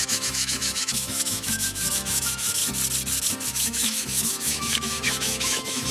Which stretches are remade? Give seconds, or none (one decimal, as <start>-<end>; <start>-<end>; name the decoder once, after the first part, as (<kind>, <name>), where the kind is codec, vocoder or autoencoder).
0.0-2.6 (autoencoder, DAC-VAE); 3.5-5.9